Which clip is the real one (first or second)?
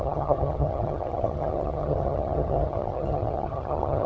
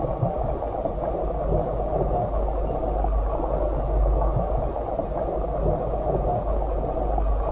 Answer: second